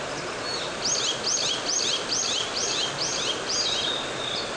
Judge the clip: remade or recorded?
recorded